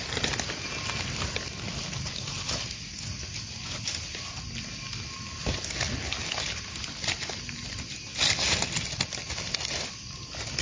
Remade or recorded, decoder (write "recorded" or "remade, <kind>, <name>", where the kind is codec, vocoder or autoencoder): recorded